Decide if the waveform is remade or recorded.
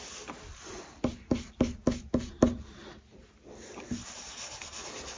recorded